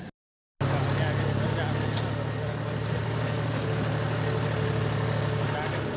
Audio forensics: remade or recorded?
recorded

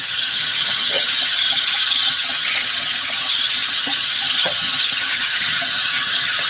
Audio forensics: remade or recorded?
remade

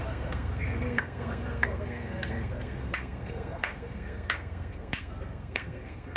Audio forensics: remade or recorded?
remade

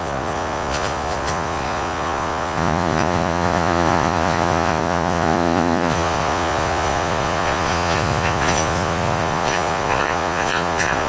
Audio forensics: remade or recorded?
remade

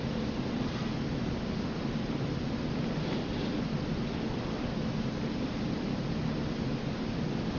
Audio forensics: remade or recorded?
recorded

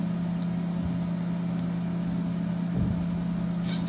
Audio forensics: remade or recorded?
recorded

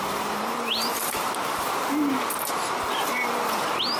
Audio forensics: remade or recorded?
remade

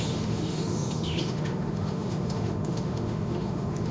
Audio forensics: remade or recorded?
remade